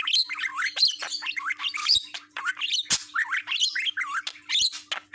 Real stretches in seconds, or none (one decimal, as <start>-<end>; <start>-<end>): 0.0-1.8; 2.5-5.1